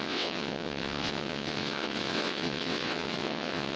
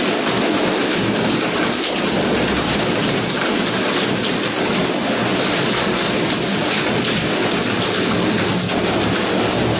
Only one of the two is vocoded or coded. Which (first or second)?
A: first